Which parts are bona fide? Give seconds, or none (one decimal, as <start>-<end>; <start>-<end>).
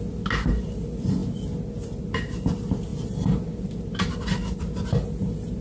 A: 0.0-5.6